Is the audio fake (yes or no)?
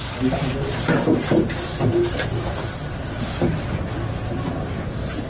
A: yes